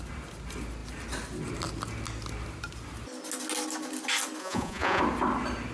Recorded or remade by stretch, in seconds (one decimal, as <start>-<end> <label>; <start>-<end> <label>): 0.0-4.4 recorded; 4.4-5.0 remade; 5.0-5.7 recorded